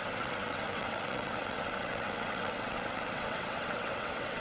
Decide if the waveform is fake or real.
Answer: fake